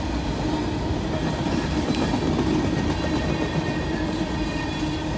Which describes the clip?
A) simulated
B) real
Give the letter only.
B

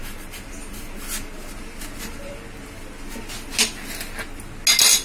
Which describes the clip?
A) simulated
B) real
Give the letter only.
B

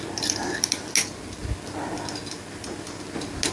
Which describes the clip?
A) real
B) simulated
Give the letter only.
A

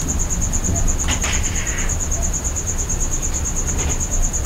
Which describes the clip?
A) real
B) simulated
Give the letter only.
A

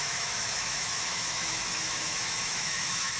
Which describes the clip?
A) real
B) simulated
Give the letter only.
B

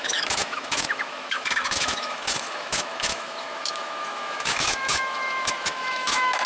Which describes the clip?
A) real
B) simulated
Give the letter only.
B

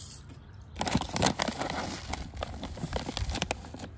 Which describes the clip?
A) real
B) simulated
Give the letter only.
A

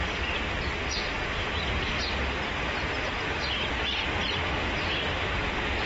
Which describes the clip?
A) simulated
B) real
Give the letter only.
B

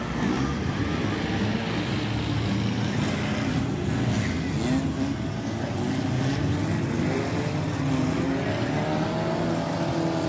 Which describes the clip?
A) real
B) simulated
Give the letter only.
A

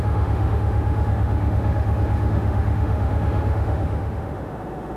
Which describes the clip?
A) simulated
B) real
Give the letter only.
A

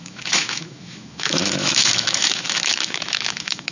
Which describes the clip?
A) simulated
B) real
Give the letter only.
A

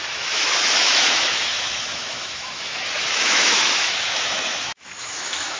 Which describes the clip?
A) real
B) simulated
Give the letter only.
B